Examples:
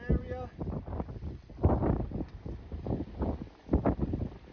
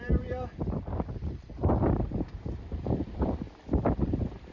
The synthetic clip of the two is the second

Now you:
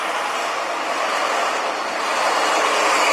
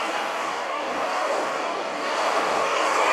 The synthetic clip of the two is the second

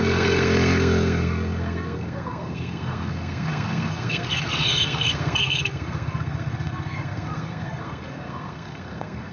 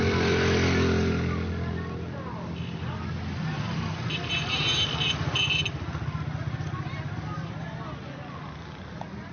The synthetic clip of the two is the first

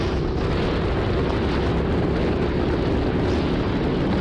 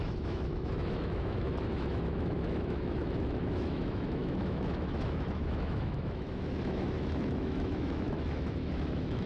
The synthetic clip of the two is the second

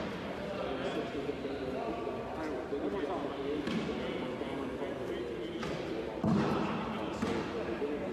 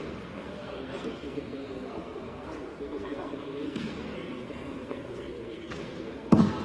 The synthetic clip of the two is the second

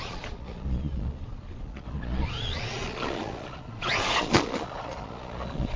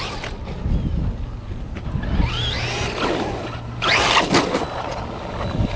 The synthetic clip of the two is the first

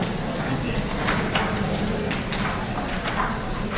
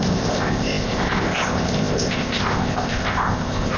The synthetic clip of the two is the second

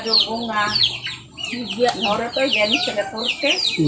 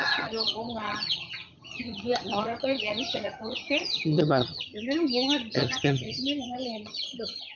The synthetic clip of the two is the second